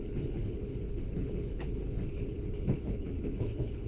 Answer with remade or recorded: remade